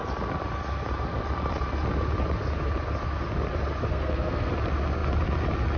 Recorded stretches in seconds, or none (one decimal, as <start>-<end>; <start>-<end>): 0.0-3.9; 4.5-5.8